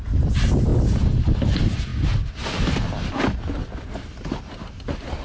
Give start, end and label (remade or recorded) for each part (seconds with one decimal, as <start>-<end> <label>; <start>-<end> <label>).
0.0-5.2 recorded

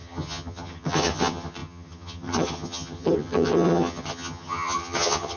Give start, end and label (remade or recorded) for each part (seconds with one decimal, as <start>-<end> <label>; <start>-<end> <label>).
0.0-5.4 remade

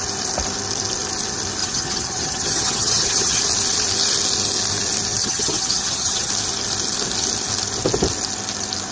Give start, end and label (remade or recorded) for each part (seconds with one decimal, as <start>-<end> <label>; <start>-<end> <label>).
0.0-1.6 recorded; 1.6-3.4 remade; 3.4-5.2 recorded; 5.2-6.3 remade; 6.3-8.9 recorded

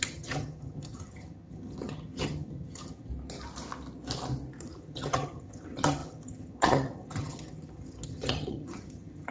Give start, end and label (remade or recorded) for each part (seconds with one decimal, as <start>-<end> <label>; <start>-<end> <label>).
0.0-3.1 remade; 3.1-4.6 recorded; 4.6-9.3 remade

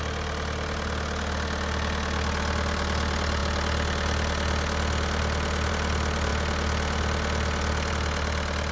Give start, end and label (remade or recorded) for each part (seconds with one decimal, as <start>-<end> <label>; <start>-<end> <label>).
0.0-8.7 recorded

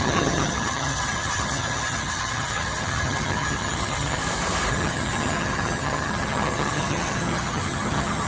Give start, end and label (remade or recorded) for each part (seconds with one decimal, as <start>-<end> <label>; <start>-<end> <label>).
0.0-4.2 remade; 4.2-4.7 recorded; 4.7-8.3 remade

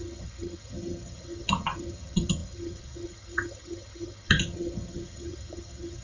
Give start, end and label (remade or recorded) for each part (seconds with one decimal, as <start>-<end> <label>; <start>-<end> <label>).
0.0-6.0 remade

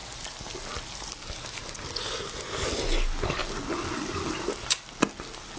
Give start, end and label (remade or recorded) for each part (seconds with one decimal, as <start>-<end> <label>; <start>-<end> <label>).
0.0-5.6 recorded